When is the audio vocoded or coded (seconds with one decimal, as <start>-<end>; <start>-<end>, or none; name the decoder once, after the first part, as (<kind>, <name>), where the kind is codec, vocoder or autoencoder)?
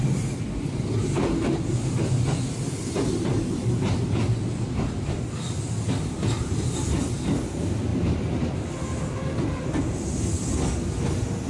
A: none